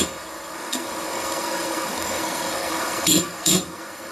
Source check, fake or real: fake